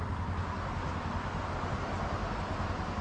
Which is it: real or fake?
real